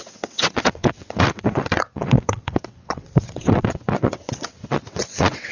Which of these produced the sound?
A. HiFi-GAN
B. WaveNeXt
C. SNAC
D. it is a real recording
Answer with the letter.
B